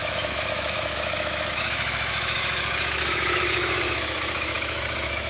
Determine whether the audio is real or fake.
fake